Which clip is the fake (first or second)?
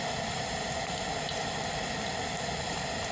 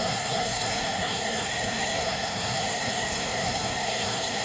second